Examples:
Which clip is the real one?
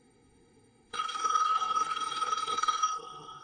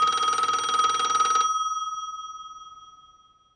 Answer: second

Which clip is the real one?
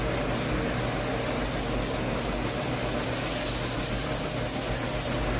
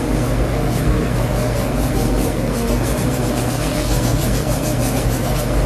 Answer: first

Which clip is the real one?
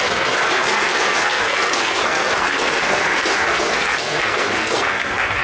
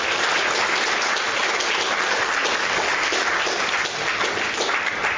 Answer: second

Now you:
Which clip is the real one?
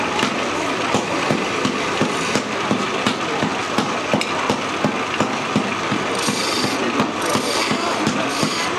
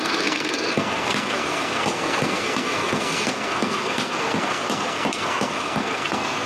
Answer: first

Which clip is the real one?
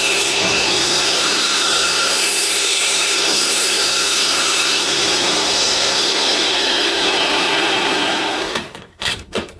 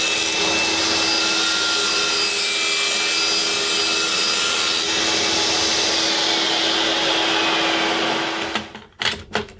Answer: second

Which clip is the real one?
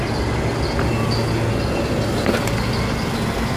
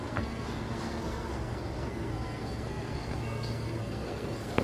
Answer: first